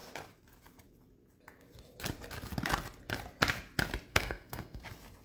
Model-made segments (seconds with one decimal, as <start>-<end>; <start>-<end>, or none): 4.1-4.8